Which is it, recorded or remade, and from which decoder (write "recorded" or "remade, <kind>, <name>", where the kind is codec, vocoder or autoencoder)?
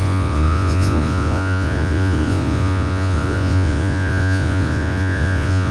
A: remade, vocoder, Vocos